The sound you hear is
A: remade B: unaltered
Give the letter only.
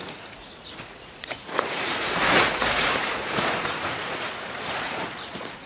A